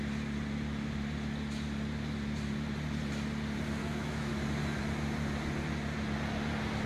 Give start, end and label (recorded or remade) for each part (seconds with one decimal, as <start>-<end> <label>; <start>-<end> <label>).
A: 0.0-3.8 recorded; 3.8-4.3 remade; 4.3-6.9 recorded